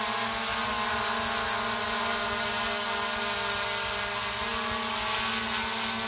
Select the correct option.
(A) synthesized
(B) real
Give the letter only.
B